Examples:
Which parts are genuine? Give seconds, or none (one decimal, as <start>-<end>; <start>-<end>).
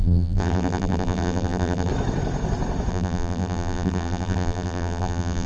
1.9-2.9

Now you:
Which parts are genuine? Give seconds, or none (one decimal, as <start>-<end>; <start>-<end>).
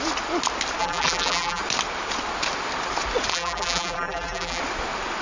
0.0-0.8; 1.6-3.3; 4.6-5.2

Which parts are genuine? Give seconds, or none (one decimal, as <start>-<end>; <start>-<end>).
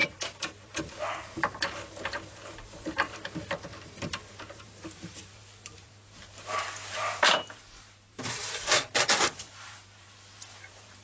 none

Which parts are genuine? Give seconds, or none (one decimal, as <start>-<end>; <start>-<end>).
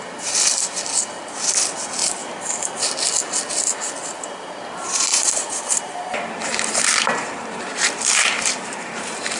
0.0-5.1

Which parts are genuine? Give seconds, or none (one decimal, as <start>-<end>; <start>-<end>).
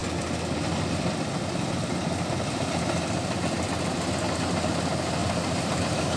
3.7-5.2; 5.8-6.2